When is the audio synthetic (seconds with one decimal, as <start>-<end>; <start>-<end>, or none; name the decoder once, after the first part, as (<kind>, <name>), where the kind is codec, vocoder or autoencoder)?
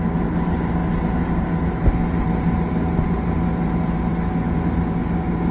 none